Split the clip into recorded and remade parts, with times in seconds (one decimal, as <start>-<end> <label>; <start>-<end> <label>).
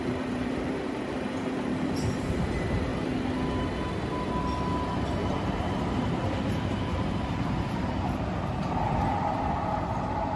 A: 0.0-2.9 remade; 2.9-4.8 recorded; 4.8-10.4 remade